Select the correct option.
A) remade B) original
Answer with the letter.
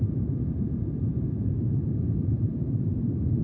A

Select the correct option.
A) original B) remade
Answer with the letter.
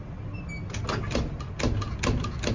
A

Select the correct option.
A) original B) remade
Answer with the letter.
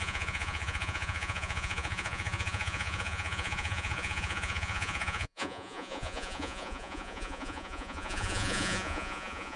B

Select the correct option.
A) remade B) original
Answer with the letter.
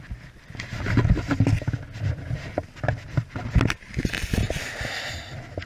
B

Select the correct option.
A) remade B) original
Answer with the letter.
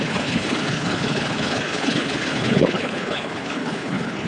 A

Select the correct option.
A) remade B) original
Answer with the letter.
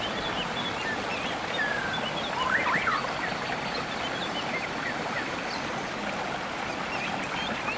B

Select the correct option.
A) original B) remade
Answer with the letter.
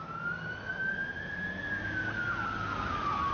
A